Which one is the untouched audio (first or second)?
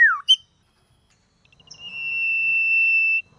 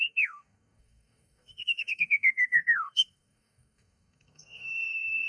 first